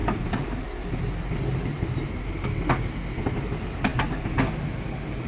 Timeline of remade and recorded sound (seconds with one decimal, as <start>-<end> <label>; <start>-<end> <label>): 0.0-0.6 remade; 0.6-1.7 recorded; 1.7-2.3 remade; 2.3-5.3 recorded